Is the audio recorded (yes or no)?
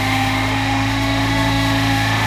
no